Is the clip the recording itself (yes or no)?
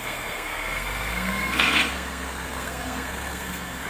no